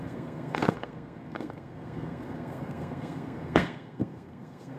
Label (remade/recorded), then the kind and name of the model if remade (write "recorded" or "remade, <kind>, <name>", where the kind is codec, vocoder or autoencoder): remade, codec, SNAC